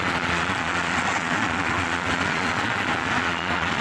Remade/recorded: remade